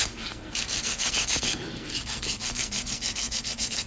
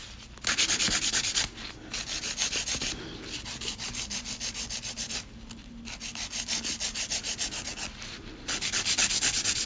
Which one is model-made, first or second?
first